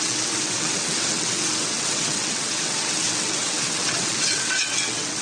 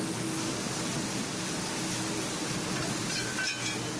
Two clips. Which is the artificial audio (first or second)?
first